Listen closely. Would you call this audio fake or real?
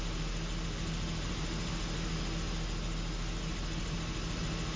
real